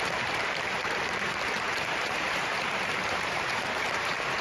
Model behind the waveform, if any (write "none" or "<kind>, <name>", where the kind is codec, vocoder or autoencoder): vocoder, BigVGAN v2